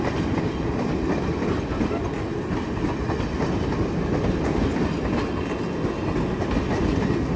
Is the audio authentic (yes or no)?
yes